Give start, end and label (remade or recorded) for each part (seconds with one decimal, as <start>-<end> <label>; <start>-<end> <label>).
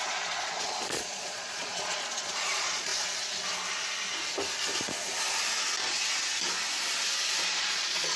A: 0.0-2.9 remade; 2.9-7.7 recorded; 7.7-8.2 remade